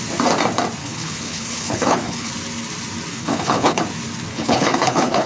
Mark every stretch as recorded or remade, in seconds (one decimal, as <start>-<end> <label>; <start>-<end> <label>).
0.0-0.8 recorded; 0.8-2.3 remade; 2.3-3.1 recorded; 3.1-3.8 remade; 3.8-4.3 recorded; 4.3-5.3 remade